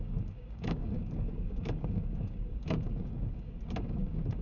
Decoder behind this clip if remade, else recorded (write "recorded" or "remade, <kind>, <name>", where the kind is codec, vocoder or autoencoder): remade, codec, DAC